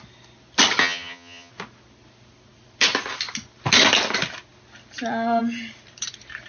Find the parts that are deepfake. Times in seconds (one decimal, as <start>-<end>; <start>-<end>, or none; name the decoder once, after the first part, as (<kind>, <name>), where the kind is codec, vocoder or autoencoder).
0.8-1.5 (vocoder, HiFi-GAN)